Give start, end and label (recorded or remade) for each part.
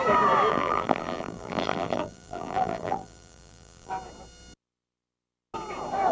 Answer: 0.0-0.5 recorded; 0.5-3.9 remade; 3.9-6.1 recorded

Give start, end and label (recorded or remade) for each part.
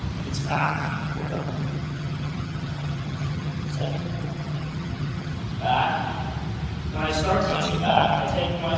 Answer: 0.0-0.4 recorded; 0.4-5.4 remade; 5.4-7.5 recorded; 7.5-8.2 remade; 8.2-8.8 recorded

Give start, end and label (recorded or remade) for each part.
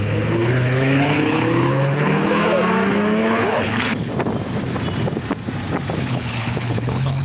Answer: 0.0-2.4 remade; 2.4-3.2 recorded; 3.2-4.1 remade; 4.1-6.0 recorded; 6.0-7.2 remade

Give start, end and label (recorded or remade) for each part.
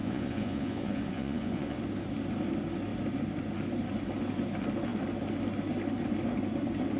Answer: 0.0-1.8 remade; 1.8-7.0 recorded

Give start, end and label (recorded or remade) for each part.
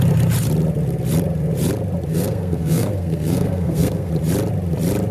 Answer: 0.0-2.1 recorded; 2.1-4.1 remade; 4.1-5.1 recorded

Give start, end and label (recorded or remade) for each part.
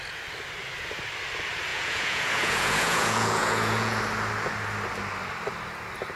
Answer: 0.0-1.7 recorded; 1.7-4.0 remade; 4.0-6.2 recorded